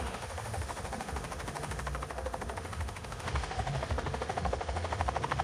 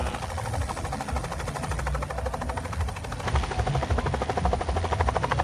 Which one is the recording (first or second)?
second